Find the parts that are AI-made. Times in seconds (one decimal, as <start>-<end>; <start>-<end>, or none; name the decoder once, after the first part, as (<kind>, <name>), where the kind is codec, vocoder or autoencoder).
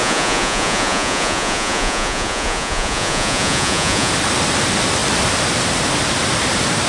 0.0-4.1 (vocoder, Vocos)